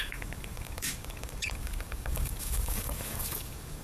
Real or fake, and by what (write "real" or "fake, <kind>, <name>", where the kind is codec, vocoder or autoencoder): fake, codec, DAC